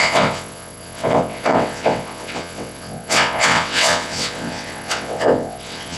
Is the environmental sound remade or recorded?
remade